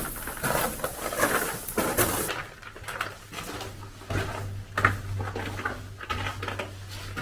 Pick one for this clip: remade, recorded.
recorded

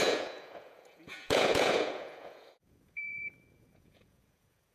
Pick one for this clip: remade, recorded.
remade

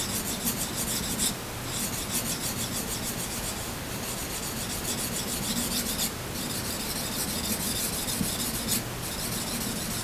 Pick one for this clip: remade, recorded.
recorded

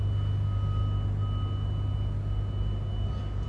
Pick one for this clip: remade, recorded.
recorded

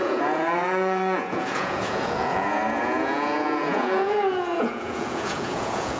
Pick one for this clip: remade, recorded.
remade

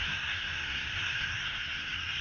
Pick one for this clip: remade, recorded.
remade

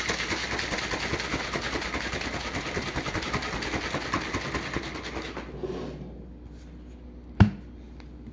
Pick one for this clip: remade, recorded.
recorded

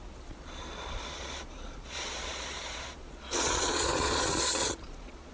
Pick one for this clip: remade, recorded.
remade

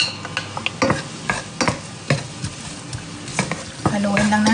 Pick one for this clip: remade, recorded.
recorded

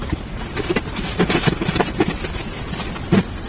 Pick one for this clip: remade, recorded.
remade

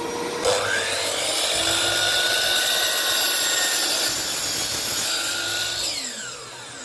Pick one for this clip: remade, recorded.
recorded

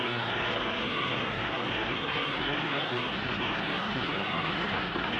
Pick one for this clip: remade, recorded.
remade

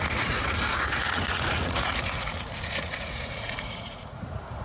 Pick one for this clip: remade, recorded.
remade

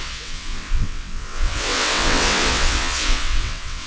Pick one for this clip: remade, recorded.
remade